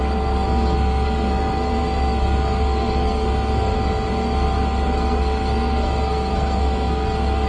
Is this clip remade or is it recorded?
remade